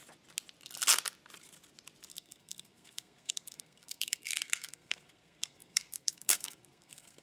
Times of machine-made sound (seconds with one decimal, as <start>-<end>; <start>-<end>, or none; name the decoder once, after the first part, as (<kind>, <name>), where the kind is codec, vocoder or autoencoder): 2.1-7.2 (codec, SNAC)